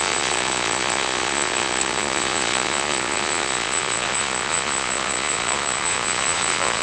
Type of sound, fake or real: fake